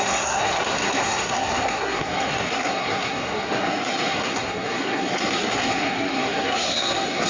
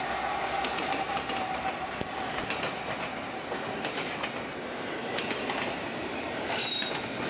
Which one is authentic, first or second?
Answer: second